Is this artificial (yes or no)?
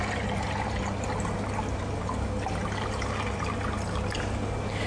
no